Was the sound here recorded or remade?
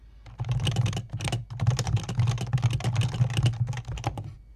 recorded